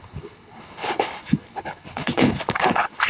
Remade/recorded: remade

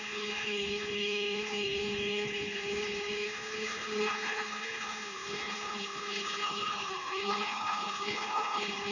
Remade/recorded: remade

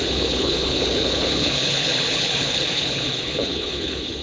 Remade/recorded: remade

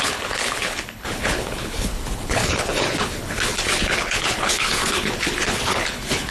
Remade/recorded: remade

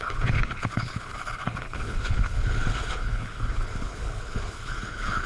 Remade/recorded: remade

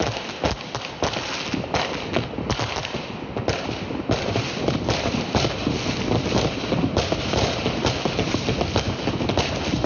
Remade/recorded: recorded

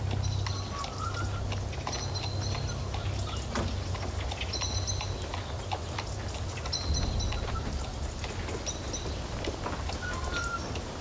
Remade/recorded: recorded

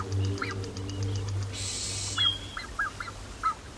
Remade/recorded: recorded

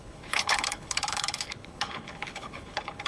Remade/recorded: remade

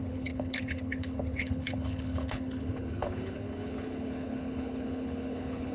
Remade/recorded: remade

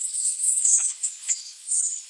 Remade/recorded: remade